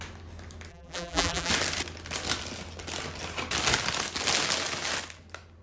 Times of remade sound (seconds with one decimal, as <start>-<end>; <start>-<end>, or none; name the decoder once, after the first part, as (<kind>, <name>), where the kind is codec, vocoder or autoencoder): 0.7-1.5 (vocoder, BigVGAN v2)